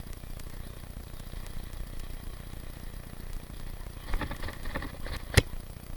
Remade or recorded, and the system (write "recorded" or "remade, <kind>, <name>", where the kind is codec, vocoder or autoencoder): recorded